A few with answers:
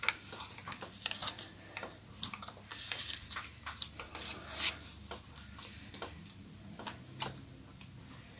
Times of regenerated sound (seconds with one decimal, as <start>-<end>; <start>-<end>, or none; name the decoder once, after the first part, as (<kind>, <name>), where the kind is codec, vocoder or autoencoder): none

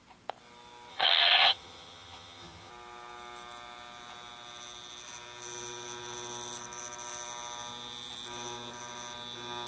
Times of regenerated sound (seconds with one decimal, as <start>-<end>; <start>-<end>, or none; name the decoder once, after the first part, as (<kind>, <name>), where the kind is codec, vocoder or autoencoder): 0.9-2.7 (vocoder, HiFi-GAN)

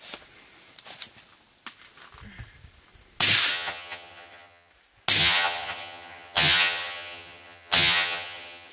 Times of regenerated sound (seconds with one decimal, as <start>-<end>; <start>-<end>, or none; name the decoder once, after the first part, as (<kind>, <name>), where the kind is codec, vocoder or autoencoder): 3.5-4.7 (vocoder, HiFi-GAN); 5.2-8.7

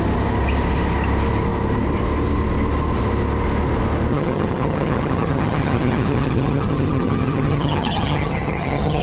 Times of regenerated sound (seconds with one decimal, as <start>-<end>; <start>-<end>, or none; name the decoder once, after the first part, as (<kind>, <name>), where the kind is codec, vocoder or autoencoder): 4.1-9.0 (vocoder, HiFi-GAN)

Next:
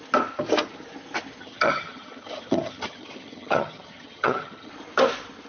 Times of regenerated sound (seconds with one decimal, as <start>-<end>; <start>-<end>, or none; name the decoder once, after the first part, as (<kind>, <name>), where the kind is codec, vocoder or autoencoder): 1.4-4.7 (vocoder, HiFi-GAN)

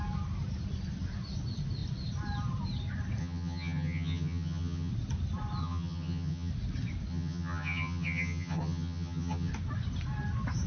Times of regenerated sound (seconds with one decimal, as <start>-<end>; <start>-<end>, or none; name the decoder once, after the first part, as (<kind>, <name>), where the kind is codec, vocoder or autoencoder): 3.2-4.9 (vocoder, HiFi-GAN); 5.6-6.5; 7.1-9.5

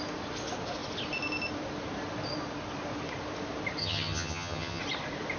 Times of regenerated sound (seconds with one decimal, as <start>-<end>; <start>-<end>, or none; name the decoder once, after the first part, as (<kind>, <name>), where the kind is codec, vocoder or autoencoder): 3.8-4.8 (vocoder, HiFi-GAN)